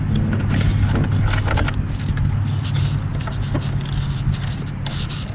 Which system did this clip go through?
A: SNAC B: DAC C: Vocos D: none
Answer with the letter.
D